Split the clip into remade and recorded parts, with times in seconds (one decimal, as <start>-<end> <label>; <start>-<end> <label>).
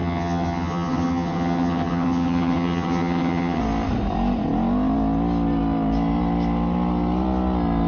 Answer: 0.0-3.6 remade; 3.6-7.9 recorded